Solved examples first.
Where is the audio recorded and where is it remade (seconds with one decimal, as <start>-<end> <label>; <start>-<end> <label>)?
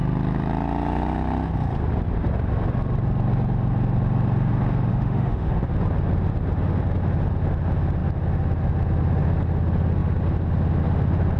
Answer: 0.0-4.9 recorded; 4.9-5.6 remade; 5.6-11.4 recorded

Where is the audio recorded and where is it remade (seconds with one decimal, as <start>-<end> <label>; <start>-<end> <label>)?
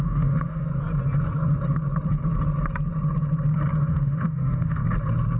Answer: 0.0-0.7 remade; 0.7-3.9 recorded; 3.9-4.8 remade; 4.8-5.4 recorded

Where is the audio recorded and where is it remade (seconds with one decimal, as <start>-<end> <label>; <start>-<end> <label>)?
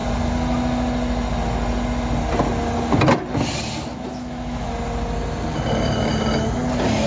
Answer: 0.0-3.9 recorded; 3.9-4.7 remade; 4.7-7.1 recorded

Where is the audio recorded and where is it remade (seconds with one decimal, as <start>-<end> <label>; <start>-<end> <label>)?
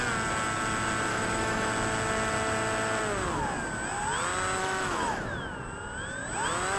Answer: 0.0-1.1 recorded; 1.1-1.7 remade; 1.7-4.6 recorded; 4.6-5.2 remade; 5.2-6.8 recorded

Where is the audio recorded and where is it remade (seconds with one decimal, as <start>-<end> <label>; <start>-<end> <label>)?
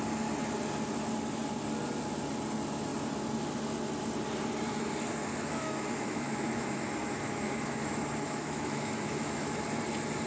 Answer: 0.0-5.3 recorded; 5.3-9.6 remade; 9.6-10.3 recorded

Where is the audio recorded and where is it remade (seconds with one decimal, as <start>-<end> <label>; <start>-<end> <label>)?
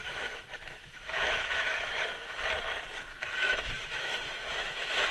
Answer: 0.0-2.4 remade; 2.4-3.1 recorded; 3.1-5.1 remade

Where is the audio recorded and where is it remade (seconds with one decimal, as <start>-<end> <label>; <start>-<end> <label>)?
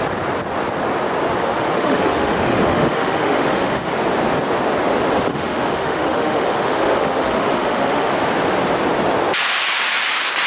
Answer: 0.0-1.4 recorded; 1.4-3.9 remade; 3.9-5.3 recorded; 5.3-8.1 remade; 8.1-10.5 recorded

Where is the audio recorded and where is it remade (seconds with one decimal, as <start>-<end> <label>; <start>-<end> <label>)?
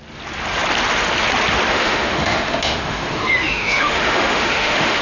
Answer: 0.0-1.7 recorded; 1.7-5.0 remade